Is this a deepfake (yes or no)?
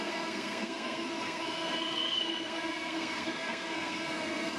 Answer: yes